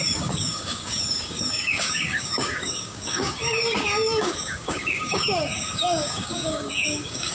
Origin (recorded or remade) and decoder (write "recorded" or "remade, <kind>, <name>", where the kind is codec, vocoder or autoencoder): remade, codec, DAC